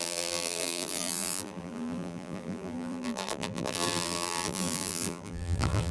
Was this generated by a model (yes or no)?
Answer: yes